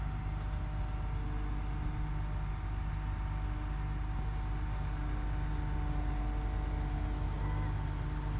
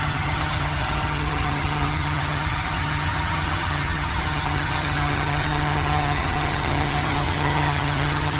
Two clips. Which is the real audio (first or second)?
first